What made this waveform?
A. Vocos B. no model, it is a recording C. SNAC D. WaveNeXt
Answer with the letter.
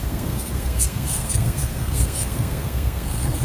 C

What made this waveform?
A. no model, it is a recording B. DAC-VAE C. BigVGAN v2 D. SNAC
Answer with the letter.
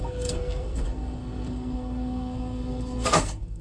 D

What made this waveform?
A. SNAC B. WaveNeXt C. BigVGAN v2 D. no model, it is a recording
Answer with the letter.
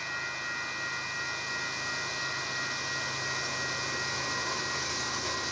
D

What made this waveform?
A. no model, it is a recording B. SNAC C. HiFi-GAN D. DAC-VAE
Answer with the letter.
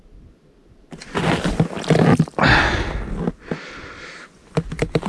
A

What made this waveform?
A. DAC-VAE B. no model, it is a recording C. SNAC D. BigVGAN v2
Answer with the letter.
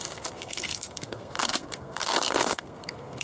C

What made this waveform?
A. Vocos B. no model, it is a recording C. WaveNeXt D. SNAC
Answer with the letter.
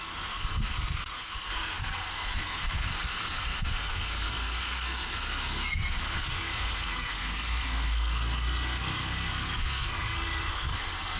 D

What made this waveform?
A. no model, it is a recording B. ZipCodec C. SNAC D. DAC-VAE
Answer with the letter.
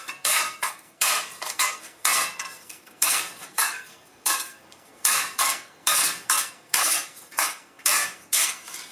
C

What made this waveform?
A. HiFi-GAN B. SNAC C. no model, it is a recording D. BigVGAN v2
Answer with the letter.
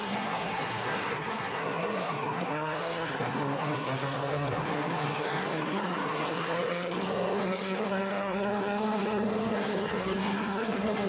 B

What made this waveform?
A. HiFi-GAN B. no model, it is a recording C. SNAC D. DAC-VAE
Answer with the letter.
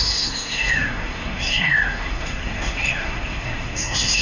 C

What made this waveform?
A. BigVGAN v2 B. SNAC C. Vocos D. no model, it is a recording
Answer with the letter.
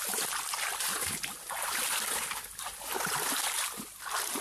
D